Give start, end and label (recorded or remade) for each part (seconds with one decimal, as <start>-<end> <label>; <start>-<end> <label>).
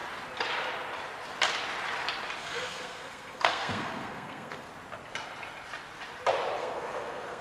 0.0-2.4 recorded; 2.4-4.7 remade; 4.7-6.6 recorded; 6.6-7.4 remade